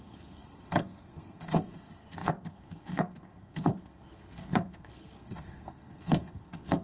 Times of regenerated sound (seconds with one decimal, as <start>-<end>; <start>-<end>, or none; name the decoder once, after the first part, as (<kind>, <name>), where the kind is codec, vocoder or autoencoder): 0.0-6.8 (codec, SNAC)